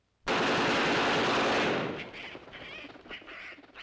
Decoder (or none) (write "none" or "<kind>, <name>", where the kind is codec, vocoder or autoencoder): none